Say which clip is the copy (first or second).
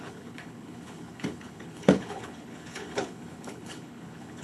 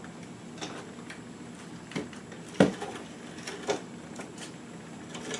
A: first